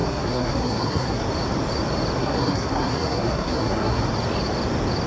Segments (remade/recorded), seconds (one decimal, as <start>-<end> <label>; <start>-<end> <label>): 0.0-1.2 remade; 1.2-2.2 recorded; 2.2-4.0 remade; 4.0-5.1 recorded